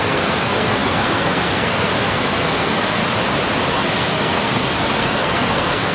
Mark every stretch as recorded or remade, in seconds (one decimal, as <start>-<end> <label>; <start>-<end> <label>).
0.0-3.0 remade; 3.0-3.7 recorded; 3.7-5.9 remade